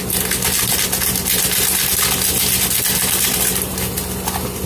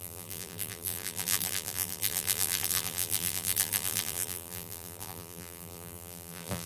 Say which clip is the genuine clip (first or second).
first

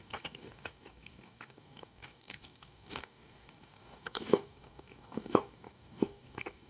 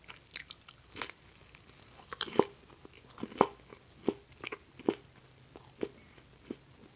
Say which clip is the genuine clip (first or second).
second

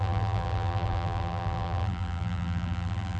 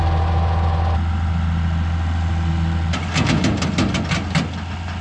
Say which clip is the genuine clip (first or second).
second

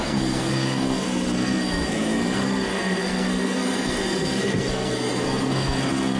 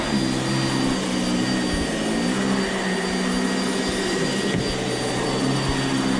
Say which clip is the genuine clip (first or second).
second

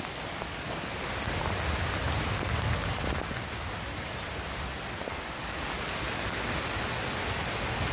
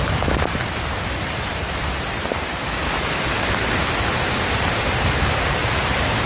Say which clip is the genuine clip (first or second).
first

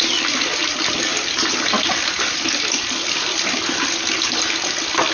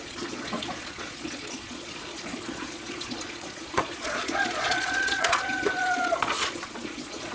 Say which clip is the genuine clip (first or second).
first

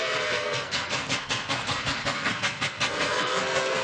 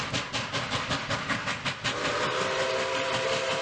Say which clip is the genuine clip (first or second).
second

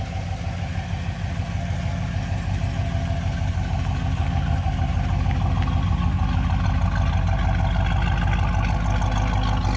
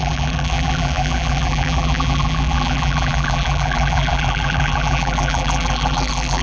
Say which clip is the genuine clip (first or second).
first